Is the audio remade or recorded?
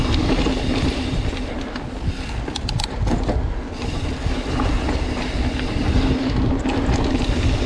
recorded